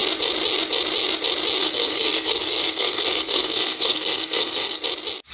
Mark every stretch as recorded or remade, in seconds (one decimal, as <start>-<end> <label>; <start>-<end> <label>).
0.0-1.6 recorded; 1.6-4.8 remade; 4.8-5.3 recorded